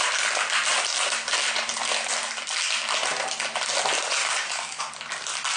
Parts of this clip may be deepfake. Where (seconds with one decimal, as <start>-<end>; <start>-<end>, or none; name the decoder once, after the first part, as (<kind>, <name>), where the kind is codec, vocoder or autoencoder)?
4.2-4.8 (codec, DAC)